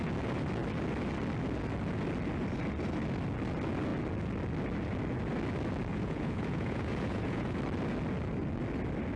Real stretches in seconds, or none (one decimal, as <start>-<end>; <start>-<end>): 0.0-5.9; 7.6-9.2